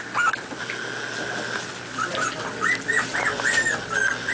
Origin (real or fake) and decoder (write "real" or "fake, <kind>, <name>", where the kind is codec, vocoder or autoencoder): real